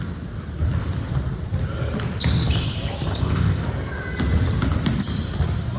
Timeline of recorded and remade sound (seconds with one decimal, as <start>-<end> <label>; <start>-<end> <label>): 0.0-3.1 recorded; 3.1-3.6 remade; 3.6-5.8 recorded